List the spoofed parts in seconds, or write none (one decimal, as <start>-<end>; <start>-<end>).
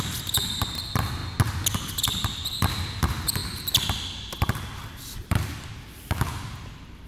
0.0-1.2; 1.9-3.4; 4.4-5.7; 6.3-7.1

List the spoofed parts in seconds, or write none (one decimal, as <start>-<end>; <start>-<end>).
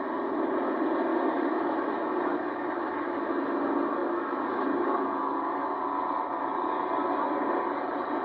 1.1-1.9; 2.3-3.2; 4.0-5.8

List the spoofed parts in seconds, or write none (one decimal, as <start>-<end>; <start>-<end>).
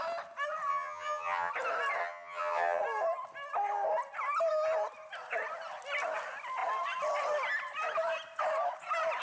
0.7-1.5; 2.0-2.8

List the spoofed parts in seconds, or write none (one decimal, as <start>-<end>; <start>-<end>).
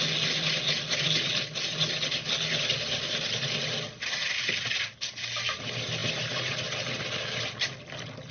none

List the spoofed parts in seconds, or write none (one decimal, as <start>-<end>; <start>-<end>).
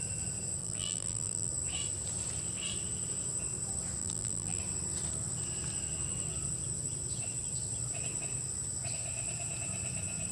0.6-1.5; 4.0-4.6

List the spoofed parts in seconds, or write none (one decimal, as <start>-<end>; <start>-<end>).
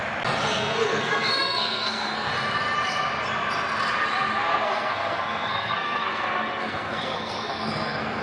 0.5-2.3; 4.4-8.2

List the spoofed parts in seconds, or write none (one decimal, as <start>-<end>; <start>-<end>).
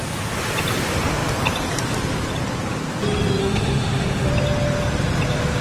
3.4-4.3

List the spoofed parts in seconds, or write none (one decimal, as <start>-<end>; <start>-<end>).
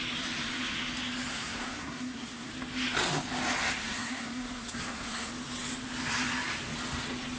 1.3-2.5; 3.8-5.3